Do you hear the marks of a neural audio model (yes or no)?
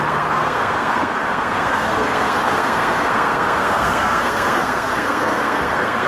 yes